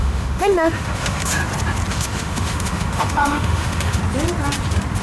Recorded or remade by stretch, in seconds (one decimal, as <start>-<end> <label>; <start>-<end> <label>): 0.0-1.4 remade; 1.4-1.9 recorded; 1.9-4.0 remade; 4.0-5.0 recorded